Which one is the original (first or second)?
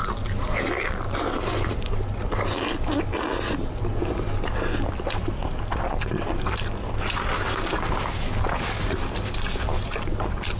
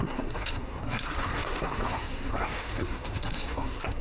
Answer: first